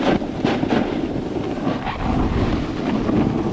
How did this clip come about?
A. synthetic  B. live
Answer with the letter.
B